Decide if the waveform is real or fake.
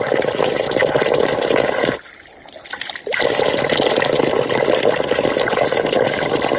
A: real